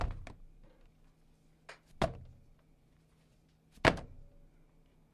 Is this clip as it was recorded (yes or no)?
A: yes